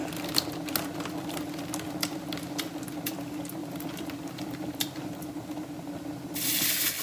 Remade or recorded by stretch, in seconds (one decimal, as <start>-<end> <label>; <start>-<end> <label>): 0.0-3.6 recorded; 3.6-5.3 remade; 5.3-7.0 recorded